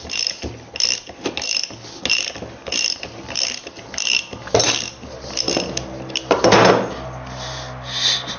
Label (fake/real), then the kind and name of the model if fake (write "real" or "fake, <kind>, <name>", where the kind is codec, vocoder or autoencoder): real